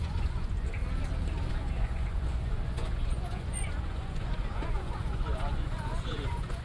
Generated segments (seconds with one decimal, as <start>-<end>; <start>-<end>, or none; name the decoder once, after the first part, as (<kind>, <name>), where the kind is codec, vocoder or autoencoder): 0.0-0.8 (vocoder, Vocos); 1.5-6.6